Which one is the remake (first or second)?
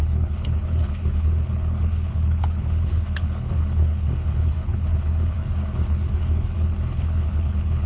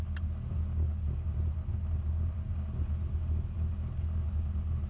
first